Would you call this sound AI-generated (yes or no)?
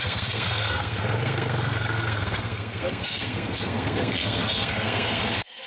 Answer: yes